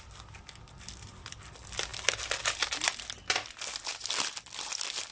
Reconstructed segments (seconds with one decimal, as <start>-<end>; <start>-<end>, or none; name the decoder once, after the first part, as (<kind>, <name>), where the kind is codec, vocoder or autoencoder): 1.9-2.9 (vocoder, BigVGAN v2); 3.9-5.1